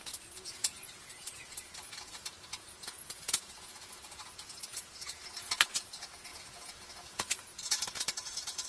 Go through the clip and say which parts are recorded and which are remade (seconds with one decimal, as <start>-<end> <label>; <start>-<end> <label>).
0.0-8.7 remade